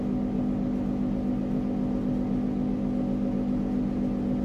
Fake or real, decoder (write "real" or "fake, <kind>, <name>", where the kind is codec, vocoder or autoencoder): real